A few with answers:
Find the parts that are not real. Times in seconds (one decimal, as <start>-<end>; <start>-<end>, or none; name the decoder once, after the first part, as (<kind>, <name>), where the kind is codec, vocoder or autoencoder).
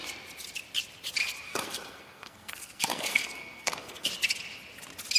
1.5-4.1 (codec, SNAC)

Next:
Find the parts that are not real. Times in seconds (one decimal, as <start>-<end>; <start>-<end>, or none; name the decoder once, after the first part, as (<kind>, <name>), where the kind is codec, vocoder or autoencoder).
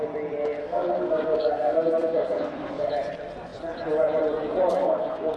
0.6-2.9 (codec, SNAC); 4.8-5.4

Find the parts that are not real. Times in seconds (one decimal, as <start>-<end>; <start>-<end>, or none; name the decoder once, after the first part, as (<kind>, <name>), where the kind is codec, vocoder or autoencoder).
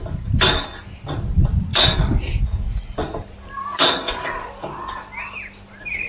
none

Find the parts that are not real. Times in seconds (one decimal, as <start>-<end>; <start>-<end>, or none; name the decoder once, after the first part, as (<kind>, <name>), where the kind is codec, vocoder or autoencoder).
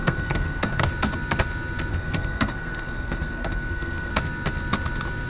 0.0-0.8 (codec, SNAC); 1.9-4.1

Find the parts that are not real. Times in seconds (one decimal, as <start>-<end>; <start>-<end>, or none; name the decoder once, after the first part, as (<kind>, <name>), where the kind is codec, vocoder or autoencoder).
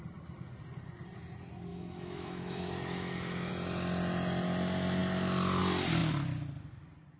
1.7-3.5 (autoencoder, DAC-VAE)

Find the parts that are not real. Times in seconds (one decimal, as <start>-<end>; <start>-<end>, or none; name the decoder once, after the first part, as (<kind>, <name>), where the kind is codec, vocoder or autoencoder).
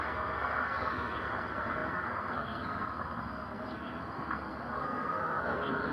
0.0-5.9 (codec, SNAC)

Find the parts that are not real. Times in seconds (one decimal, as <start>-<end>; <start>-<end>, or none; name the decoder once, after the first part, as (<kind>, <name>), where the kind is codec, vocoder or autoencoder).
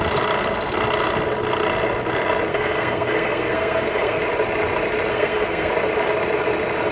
2.5-4.2 (codec, SNAC); 5.1-5.7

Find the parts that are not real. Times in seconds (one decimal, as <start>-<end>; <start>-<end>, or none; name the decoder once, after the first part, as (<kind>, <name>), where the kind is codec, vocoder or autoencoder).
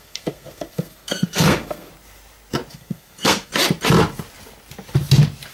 0.0-1.9 (codec, SNAC); 2.7-3.5